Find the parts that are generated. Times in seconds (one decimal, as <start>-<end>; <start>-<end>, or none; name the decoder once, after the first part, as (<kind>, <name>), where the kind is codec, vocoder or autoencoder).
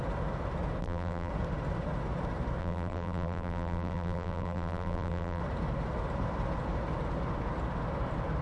0.8-1.3 (vocoder, BigVGAN v2); 2.6-5.4